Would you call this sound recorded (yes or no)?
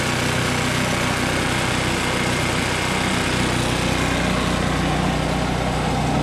yes